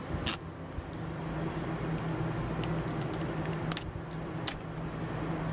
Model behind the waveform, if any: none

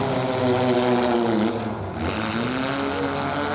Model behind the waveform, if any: none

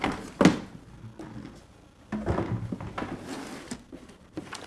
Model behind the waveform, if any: none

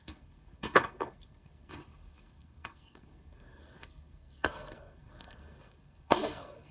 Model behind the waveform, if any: codec, SNAC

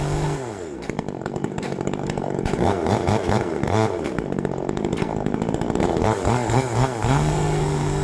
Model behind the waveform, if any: codec, SNAC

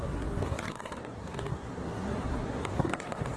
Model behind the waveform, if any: codec, SNAC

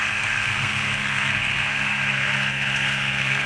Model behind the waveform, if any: codec, SNAC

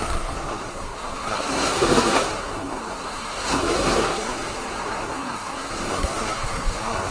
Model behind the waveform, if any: codec, SNAC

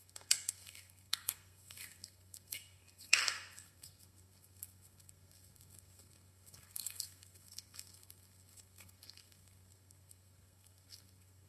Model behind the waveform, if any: codec, SNAC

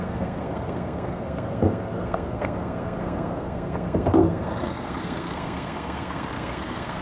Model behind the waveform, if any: codec, SNAC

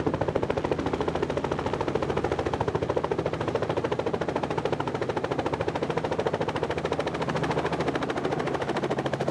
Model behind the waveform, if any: none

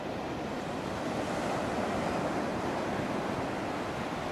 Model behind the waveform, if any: none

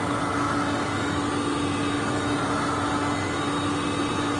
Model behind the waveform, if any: none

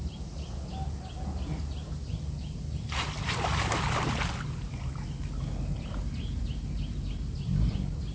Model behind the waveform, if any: none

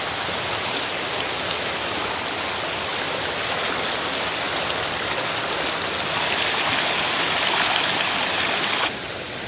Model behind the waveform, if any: none